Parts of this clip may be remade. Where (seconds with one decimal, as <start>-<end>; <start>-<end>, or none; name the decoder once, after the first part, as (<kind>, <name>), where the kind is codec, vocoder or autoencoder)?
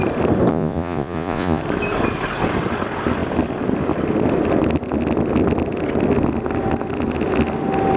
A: 0.5-1.6 (vocoder, Vocos)